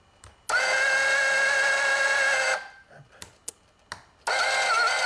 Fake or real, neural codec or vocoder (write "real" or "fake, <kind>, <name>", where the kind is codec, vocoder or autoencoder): real